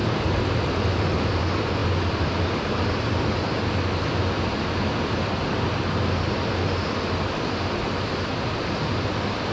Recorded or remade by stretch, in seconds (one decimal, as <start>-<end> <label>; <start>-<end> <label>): 0.0-1.8 remade; 1.8-4.0 recorded; 4.0-9.5 remade